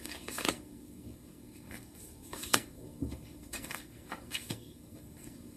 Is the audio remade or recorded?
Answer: remade